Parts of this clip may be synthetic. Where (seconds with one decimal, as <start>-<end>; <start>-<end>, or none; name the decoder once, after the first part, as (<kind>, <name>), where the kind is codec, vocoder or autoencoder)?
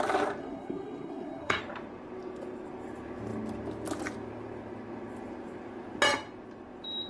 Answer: 0.4-1.6 (codec, SNAC)